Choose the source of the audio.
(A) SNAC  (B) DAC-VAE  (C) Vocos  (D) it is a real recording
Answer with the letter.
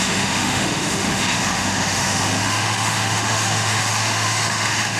B